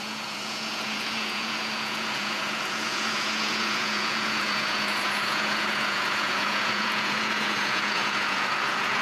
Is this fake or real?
fake